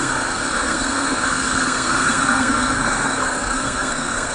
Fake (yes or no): yes